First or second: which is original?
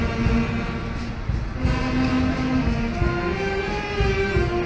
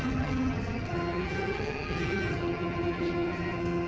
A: first